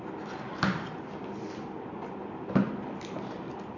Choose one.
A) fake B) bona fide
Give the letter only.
B